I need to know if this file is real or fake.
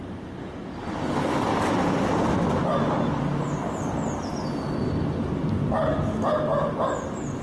real